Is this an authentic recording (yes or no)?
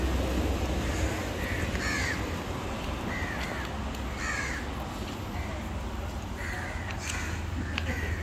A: yes